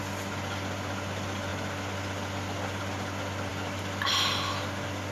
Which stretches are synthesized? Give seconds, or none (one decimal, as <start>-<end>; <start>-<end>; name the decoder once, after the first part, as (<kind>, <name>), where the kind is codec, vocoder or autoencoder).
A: none